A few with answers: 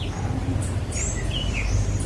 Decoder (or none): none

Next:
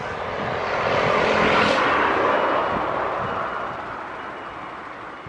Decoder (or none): none